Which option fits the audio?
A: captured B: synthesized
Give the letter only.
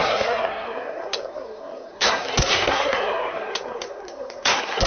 B